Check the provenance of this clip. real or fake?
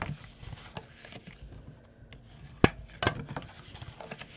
real